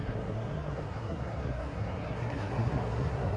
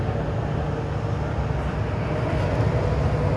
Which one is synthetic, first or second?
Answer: first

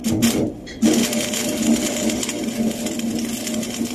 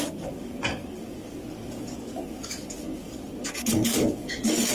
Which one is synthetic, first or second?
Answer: second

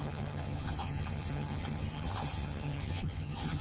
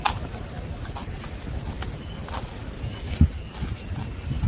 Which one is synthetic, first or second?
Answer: first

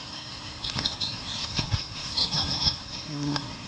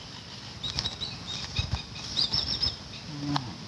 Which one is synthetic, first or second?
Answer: first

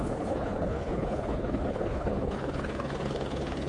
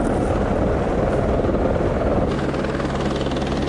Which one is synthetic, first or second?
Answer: first